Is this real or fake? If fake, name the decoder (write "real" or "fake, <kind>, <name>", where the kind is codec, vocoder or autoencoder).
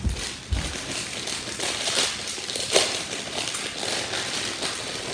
real